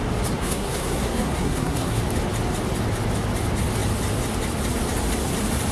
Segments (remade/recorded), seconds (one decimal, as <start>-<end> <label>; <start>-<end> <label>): 0.0-0.4 recorded; 0.4-2.0 remade; 2.0-5.7 recorded